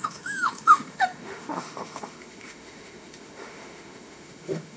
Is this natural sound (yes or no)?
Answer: no